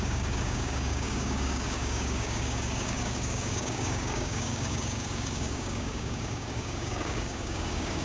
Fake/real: fake